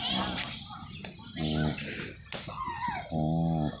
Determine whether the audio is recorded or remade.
recorded